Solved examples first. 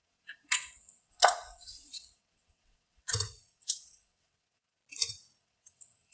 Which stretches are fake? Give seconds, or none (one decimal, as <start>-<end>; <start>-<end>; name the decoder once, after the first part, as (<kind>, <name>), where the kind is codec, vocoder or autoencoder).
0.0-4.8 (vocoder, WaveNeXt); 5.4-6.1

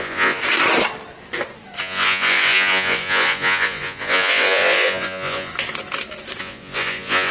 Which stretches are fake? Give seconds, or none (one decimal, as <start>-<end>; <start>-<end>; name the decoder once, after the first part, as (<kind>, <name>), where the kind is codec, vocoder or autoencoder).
0.0-0.4 (vocoder, Vocos); 1.8-5.5; 6.4-7.3

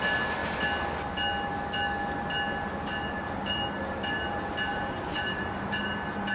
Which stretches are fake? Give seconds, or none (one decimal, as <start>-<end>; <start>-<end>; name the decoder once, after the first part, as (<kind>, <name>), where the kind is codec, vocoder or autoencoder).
4.7-5.8 (vocoder, BigVGAN v2)